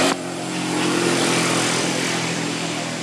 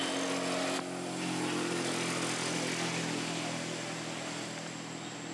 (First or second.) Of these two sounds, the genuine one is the second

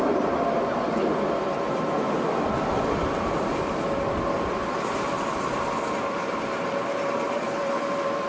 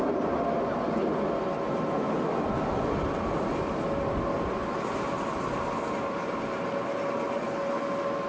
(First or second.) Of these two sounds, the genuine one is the second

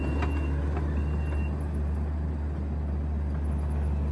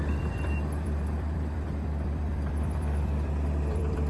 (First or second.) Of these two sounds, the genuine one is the first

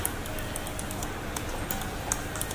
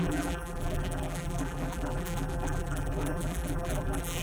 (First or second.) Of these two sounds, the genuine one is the first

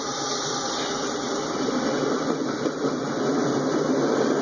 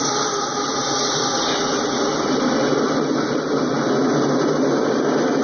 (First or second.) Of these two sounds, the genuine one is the second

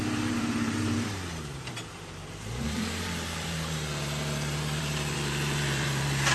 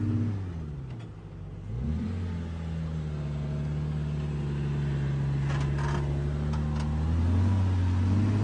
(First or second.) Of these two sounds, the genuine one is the second